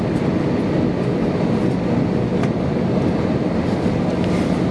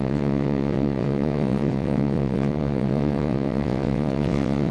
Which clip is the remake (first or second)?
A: second